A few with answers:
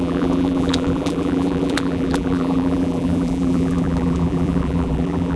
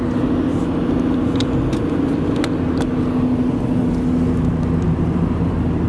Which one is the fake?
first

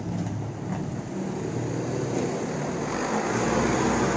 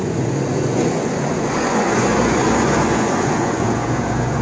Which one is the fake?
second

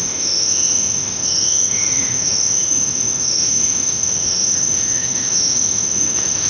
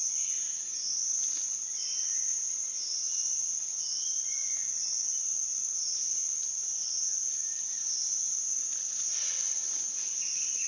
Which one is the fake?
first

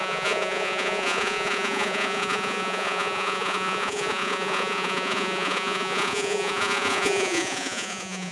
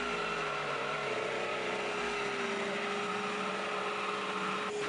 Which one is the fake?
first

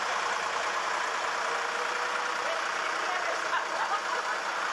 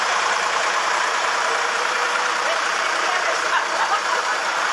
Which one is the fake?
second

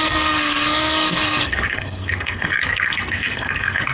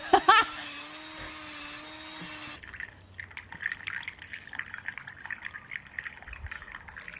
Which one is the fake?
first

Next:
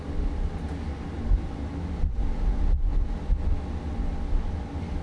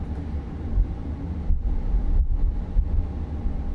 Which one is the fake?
second